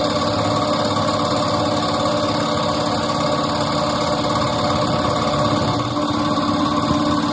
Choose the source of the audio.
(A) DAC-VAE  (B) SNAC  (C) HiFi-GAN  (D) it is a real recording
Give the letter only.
D